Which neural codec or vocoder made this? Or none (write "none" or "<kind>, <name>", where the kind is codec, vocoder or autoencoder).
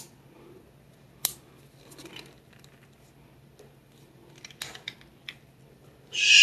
none